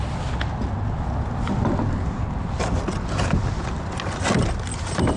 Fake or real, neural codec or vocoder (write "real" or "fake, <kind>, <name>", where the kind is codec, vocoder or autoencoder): real